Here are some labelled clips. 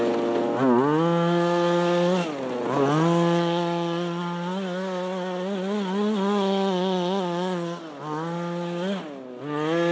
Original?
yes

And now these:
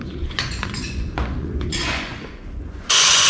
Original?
no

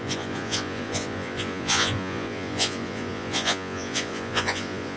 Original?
no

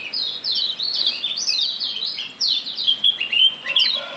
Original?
no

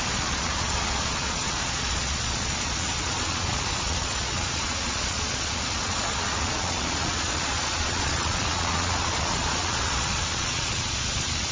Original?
no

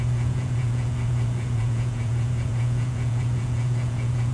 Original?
no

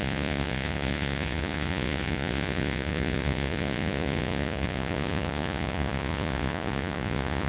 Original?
no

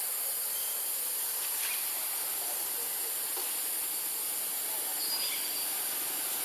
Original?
yes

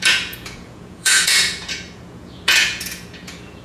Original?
no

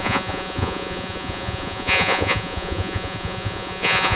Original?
no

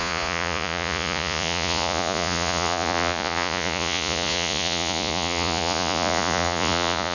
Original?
no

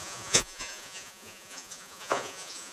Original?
no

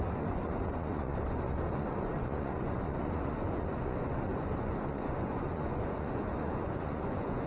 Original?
no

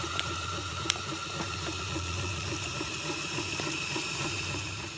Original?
no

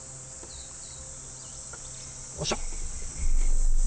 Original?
yes